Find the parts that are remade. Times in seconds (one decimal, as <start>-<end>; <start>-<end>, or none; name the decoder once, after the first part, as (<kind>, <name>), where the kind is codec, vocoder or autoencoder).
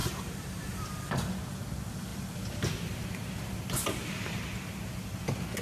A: 0.0-0.6 (vocoder, BigVGAN v2)